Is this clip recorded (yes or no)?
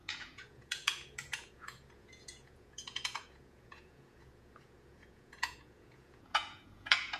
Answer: no